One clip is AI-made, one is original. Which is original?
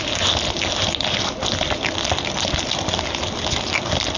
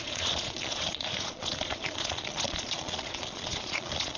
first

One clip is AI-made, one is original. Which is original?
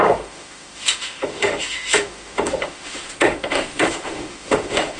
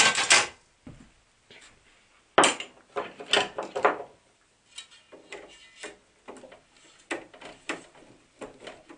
second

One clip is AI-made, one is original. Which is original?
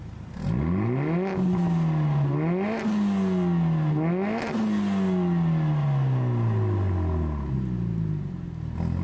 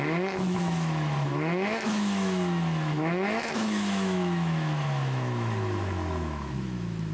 first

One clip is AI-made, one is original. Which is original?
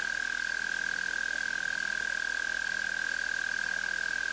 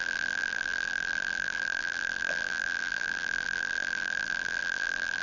first